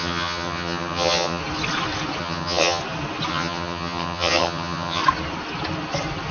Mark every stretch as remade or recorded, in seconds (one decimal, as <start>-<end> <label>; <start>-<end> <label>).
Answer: 0.0-1.4 remade; 1.4-2.2 recorded; 2.2-2.8 remade; 2.8-3.3 recorded; 3.3-5.0 remade; 5.0-6.3 recorded